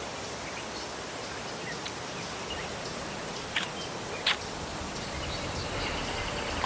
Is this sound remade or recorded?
recorded